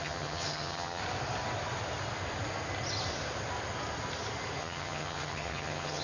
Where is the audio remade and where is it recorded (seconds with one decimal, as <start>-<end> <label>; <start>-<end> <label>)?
0.0-1.0 remade; 1.0-4.6 recorded; 4.6-6.0 remade